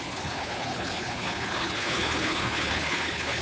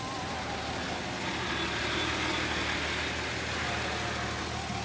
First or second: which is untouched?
second